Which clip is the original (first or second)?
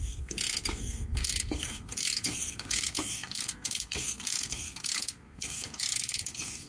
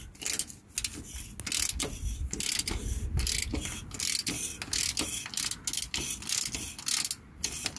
second